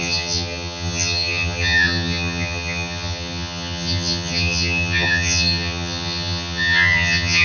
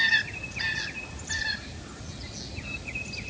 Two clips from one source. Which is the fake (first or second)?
first